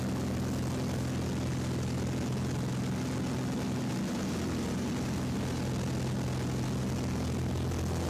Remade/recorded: recorded